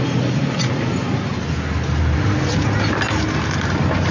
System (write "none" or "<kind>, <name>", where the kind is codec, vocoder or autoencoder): none